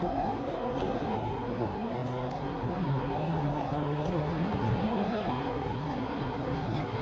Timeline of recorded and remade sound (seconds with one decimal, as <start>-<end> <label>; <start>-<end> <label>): 0.0-7.0 remade